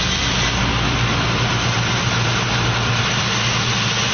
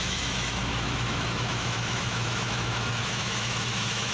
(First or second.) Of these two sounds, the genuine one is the first